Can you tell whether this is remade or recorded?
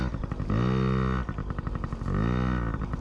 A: recorded